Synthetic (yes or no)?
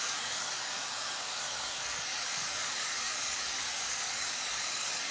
yes